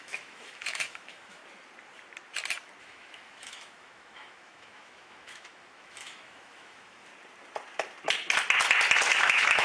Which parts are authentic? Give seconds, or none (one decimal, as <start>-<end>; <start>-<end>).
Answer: 1.4-2.8; 7.1-9.2